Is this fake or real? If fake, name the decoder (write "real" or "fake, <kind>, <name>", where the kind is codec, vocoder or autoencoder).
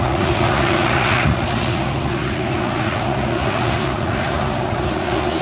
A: fake, vocoder, Vocos